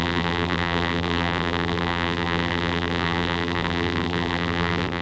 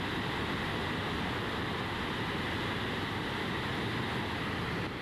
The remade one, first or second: first